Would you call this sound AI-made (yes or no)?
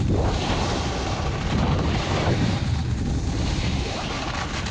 no